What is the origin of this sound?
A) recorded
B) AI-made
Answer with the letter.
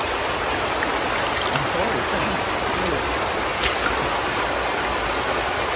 A